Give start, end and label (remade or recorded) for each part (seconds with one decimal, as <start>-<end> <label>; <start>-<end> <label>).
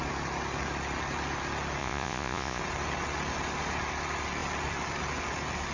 0.0-1.8 recorded; 1.8-2.6 remade; 2.6-5.7 recorded